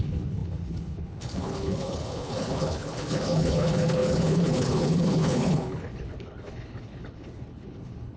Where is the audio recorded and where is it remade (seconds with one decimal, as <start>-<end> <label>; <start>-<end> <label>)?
0.0-8.2 remade